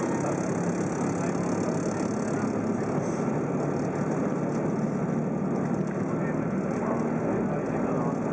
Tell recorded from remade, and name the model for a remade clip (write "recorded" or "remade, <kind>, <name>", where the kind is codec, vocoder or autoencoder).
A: recorded